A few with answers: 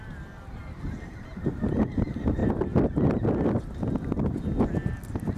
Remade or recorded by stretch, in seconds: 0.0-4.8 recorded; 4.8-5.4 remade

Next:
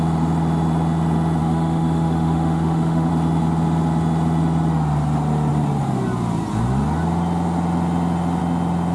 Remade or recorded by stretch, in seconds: 0.0-1.4 recorded; 1.4-3.1 remade; 3.1-8.9 recorded

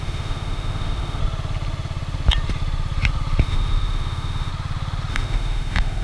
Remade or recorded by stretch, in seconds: 0.0-1.2 remade; 1.2-3.4 recorded; 3.4-4.5 remade; 4.5-5.1 recorded; 5.1-6.0 remade

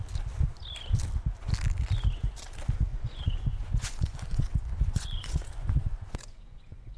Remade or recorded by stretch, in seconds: 0.0-2.9 recorded; 2.9-7.0 remade

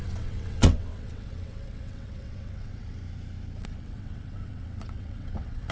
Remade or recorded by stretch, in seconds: 0.0-3.0 remade; 3.0-3.6 recorded; 3.6-5.7 remade